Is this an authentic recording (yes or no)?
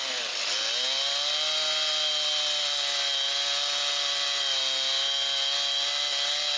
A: yes